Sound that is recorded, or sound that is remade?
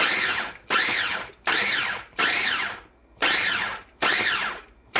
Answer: remade